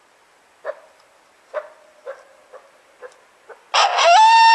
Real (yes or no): yes